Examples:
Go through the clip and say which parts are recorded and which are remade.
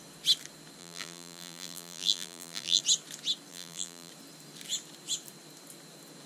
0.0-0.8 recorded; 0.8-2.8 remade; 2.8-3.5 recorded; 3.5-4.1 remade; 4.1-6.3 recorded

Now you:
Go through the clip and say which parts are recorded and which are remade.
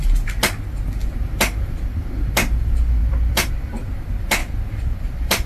0.0-1.0 recorded; 1.0-2.1 remade; 2.1-3.0 recorded; 3.0-3.5 remade; 3.5-4.4 recorded; 4.4-5.5 remade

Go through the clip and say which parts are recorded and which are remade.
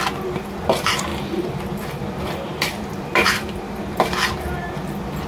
0.0-1.1 recorded; 1.1-4.3 remade; 4.3-5.3 recorded